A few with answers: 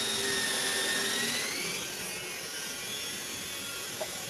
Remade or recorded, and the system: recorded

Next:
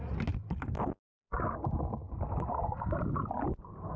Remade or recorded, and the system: recorded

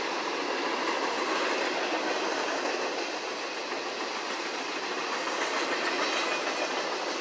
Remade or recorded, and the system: recorded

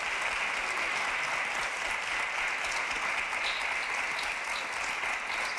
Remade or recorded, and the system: recorded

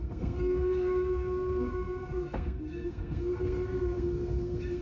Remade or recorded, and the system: remade, codec, SNAC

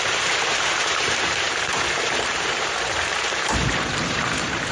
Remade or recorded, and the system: remade, vocoder, BigVGAN v2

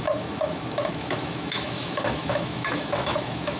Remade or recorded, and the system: remade, autoencoder, DAC-VAE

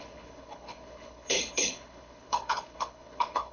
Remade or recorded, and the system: remade, codec, HILCodec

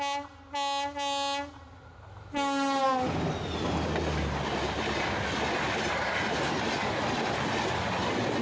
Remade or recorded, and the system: recorded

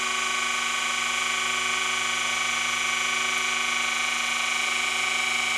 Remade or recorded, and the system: recorded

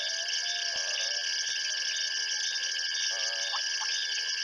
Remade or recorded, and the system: recorded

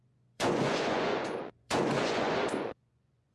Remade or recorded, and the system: remade, vocoder, Vocos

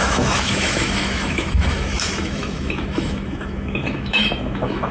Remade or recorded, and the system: remade, autoencoder, DAC-VAE